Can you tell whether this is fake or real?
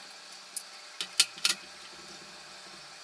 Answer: real